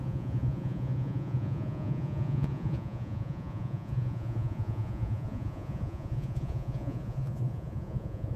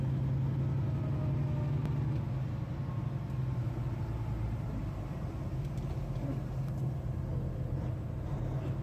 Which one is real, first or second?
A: second